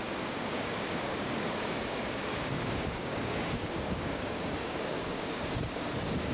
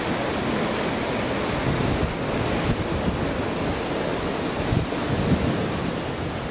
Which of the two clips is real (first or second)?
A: second